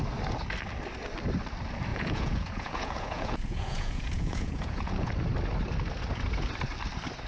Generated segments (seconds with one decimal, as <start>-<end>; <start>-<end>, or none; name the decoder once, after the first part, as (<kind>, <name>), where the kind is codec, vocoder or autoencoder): 1.9-5.1 (vocoder, Vocos)